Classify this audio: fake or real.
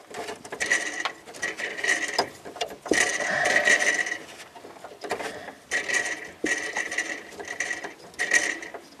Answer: real